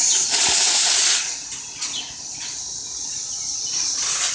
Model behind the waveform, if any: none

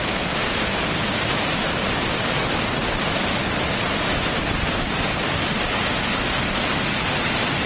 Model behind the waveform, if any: none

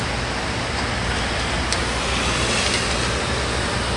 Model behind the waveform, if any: none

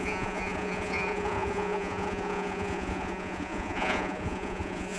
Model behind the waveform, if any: vocoder, Vocos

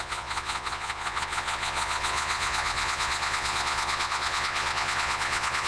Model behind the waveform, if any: vocoder, Vocos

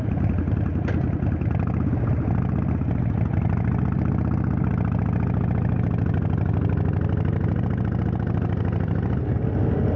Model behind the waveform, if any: none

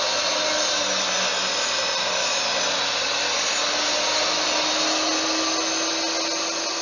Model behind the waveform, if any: none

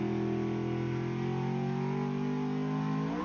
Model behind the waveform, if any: none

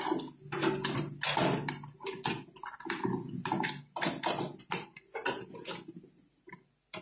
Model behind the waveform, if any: none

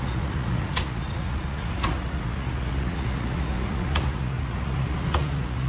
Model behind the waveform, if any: vocoder, Vocos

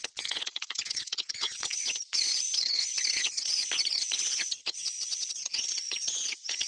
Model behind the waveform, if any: vocoder, Vocos